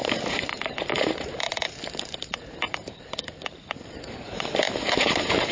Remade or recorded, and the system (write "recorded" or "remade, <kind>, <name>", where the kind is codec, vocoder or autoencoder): remade, vocoder, BigVGAN v2